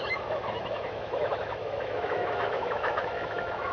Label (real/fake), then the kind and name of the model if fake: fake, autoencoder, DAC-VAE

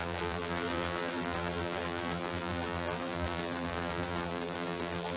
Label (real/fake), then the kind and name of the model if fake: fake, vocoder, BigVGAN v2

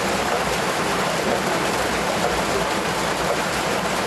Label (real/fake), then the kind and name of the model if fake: real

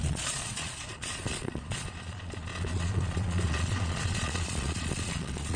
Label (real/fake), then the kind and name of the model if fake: fake, vocoder, Vocos